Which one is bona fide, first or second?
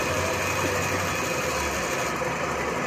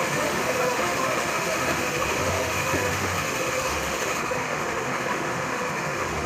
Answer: first